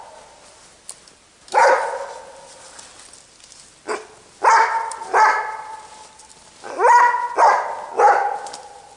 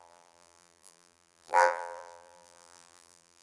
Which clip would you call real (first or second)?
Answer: first